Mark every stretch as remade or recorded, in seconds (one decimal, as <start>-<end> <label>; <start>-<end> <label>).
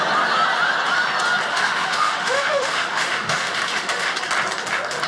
0.0-1.5 recorded; 1.5-4.2 remade; 4.2-5.1 recorded